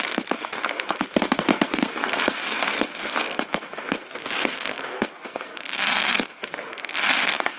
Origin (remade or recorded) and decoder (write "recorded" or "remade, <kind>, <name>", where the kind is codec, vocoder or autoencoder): remade, codec, SNAC